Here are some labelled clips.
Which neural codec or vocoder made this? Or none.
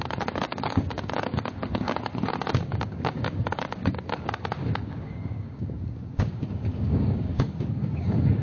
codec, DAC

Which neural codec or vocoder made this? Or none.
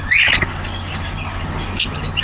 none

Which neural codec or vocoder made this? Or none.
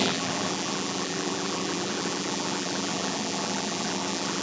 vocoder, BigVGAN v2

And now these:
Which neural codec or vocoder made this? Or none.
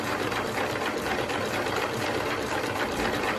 none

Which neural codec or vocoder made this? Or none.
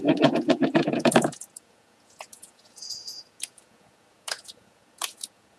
vocoder, Vocos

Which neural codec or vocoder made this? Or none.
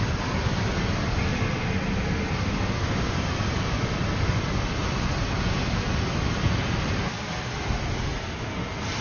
none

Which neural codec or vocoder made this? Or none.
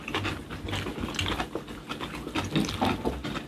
none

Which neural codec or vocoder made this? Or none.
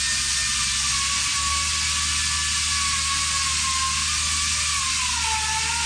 none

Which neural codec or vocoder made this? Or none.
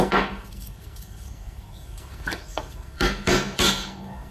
codec, SNAC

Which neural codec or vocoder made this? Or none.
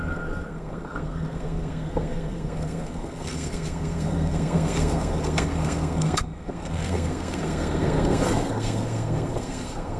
codec, SNAC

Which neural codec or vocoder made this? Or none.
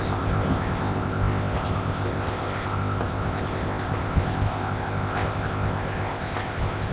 codec, ZipCodec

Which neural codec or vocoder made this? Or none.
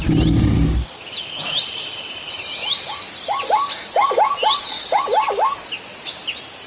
none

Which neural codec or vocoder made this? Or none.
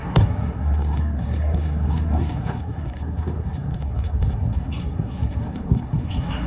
codec, SNAC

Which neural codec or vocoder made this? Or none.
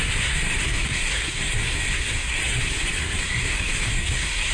codec, SNAC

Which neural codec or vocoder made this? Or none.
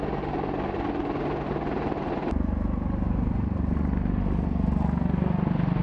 none